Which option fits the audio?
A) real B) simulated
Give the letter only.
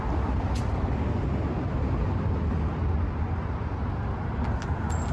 A